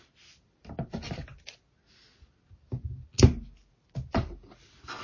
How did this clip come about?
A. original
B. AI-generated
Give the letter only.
A